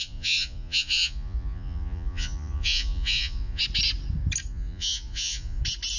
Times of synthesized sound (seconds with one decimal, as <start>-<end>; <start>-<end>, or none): 0.0-3.6; 4.5-5.6